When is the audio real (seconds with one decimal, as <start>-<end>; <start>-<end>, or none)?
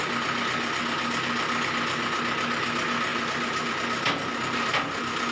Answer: 0.0-5.3